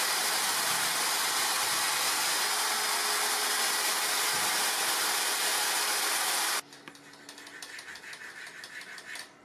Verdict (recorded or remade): recorded